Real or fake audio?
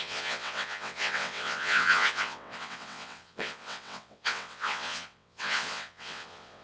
fake